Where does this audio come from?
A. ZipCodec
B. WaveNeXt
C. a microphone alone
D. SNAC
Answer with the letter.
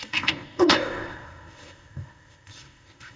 A